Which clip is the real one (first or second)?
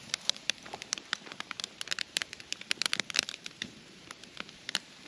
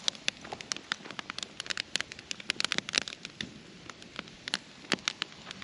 second